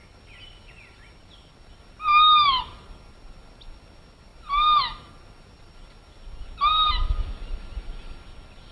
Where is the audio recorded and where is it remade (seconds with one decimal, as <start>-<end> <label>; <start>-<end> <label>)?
0.0-2.1 recorded; 2.1-2.6 remade; 2.6-8.7 recorded